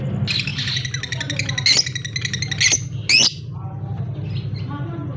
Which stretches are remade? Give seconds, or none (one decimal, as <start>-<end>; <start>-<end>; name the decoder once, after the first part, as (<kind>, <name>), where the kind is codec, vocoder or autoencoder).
none